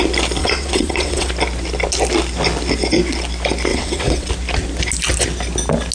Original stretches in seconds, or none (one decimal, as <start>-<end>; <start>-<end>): 0.0-0.4; 1.3-3.7; 4.3-5.9